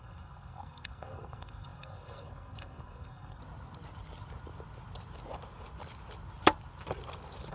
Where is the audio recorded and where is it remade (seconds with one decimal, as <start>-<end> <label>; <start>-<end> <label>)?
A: 0.0-3.4 remade; 3.4-7.5 recorded

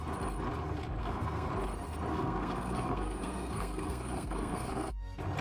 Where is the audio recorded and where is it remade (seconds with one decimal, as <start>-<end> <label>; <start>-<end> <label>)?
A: 0.0-1.0 recorded; 1.0-1.5 remade; 1.5-2.1 recorded; 2.1-4.9 remade; 4.9-5.4 recorded

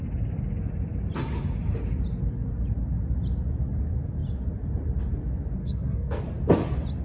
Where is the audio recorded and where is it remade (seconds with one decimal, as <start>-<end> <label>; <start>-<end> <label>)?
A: 0.0-5.6 recorded; 5.6-6.2 remade; 6.2-7.0 recorded